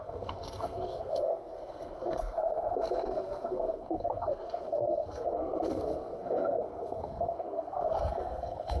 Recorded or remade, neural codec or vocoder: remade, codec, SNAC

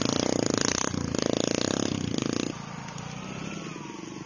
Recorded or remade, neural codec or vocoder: recorded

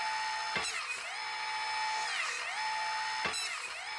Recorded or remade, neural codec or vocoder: recorded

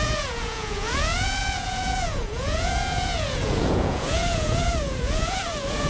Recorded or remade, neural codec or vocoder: remade, vocoder, Vocos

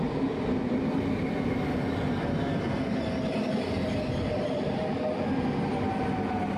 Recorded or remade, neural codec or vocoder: recorded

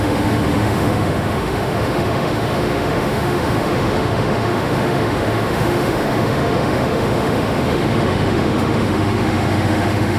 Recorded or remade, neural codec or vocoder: remade, autoencoder, DAC-VAE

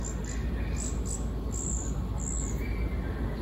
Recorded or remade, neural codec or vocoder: recorded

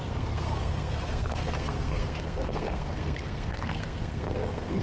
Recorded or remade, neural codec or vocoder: remade, codec, SNAC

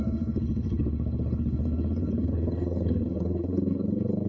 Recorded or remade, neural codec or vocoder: remade, codec, HILCodec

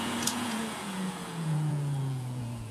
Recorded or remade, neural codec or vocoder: remade, vocoder, Vocos